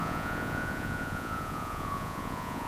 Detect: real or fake fake